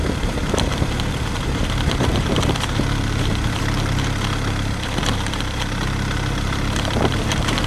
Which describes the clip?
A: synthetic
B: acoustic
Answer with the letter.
A